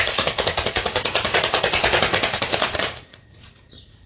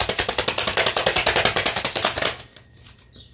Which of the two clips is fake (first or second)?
first